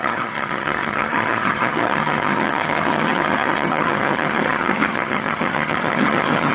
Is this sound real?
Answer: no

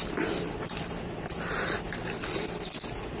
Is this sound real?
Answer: yes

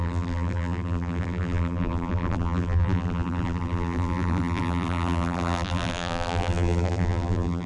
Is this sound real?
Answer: no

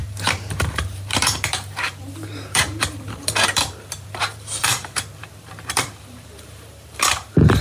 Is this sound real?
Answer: no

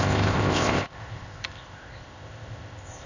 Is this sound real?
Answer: no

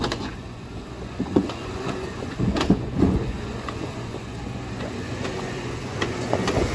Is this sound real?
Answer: no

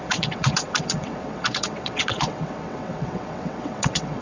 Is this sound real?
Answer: no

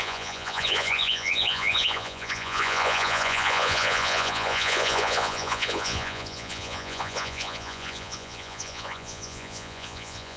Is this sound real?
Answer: no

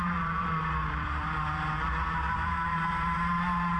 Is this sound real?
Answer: no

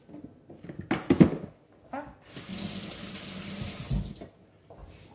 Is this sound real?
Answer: yes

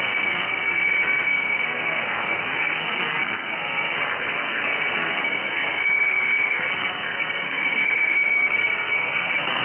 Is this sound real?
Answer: no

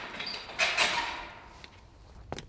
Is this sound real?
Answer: yes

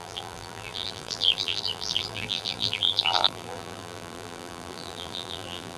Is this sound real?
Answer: no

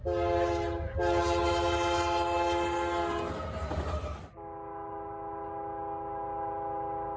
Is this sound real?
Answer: yes